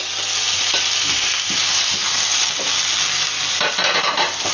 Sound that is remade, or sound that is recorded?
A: recorded